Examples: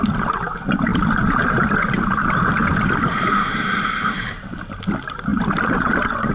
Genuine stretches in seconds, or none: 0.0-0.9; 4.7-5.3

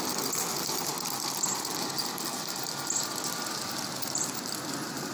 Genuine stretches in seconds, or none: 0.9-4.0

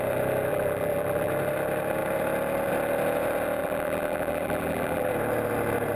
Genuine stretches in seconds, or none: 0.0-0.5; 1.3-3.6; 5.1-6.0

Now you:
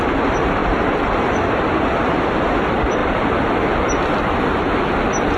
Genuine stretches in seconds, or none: 0.0-0.6; 1.3-3.0; 3.6-5.4

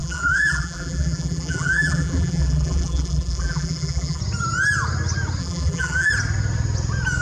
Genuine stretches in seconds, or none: 4.2-5.4; 6.1-7.2

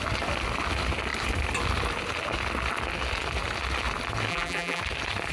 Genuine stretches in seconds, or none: 0.0-4.3; 4.8-5.3

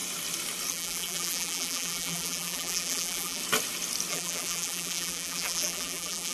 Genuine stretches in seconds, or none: 0.0-0.7; 3.4-4.1